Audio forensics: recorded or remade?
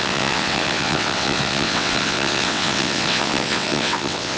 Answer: remade